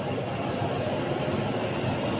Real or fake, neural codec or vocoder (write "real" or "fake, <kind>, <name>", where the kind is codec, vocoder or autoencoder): real